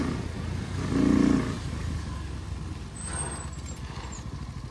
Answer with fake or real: real